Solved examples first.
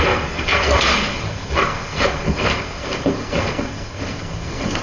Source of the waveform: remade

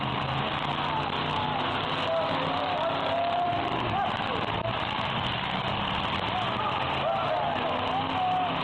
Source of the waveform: recorded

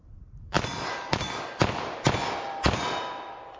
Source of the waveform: remade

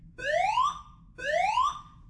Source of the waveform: recorded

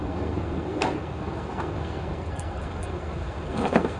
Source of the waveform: remade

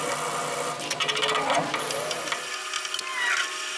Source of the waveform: recorded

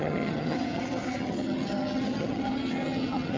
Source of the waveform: remade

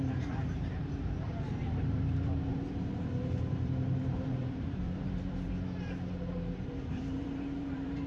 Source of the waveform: remade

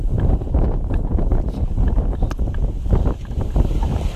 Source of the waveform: remade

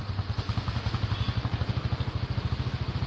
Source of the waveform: recorded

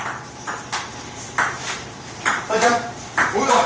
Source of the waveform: remade